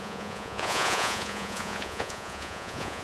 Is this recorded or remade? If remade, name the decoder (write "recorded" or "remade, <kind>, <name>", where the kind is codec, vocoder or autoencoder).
remade, vocoder, Vocos